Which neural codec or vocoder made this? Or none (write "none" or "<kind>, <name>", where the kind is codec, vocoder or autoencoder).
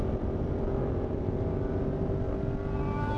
none